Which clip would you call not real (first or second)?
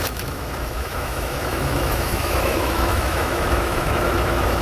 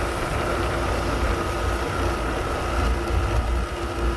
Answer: first